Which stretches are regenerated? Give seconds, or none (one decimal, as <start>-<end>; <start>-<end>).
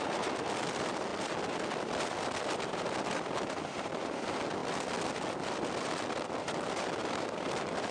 none